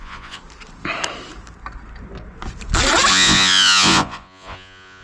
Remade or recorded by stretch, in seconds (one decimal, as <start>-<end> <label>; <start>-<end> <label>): 0.0-0.4 remade; 0.4-3.1 recorded; 3.1-5.0 remade